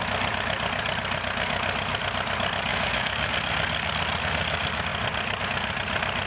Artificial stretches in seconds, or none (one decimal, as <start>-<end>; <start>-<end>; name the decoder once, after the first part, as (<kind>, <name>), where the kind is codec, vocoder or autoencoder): 2.7-3.3 (autoencoder, DAC-VAE)